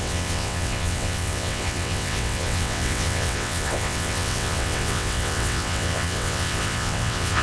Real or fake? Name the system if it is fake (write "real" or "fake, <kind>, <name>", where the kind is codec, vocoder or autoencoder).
fake, vocoder, WaveNeXt